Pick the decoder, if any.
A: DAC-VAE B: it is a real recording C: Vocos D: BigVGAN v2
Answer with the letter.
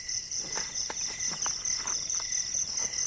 D